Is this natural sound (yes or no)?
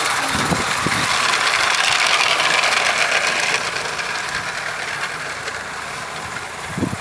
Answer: yes